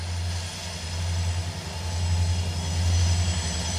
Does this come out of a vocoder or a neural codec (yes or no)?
no